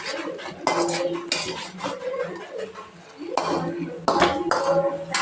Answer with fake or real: real